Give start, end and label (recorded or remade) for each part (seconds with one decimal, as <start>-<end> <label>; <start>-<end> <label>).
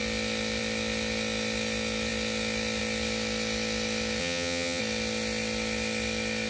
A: 0.0-4.2 recorded; 4.2-4.8 remade; 4.8-6.5 recorded